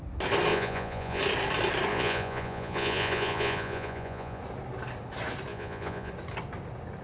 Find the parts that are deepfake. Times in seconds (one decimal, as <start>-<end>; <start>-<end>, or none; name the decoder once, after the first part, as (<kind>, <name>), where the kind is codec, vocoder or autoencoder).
0.5-1.2 (vocoder, Vocos); 1.9-4.4; 5.5-6.1